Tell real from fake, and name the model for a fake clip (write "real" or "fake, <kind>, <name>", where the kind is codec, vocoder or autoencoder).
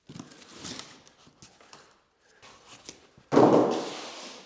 real